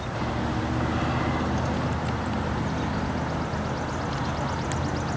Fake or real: real